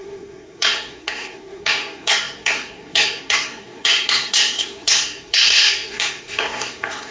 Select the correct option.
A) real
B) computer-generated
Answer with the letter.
B